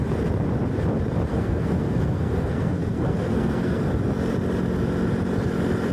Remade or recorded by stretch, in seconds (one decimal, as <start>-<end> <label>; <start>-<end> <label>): 0.0-1.3 recorded; 1.3-3.8 remade; 3.8-5.9 recorded